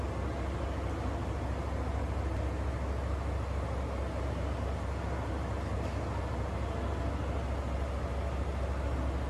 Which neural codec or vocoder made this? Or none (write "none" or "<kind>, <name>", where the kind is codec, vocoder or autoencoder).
none